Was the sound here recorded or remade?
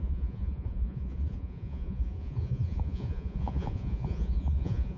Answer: remade